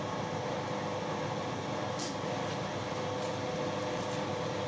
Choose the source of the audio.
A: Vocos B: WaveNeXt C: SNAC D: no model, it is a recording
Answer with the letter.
D